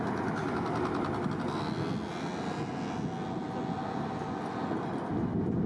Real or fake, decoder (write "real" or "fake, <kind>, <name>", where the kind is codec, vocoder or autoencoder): real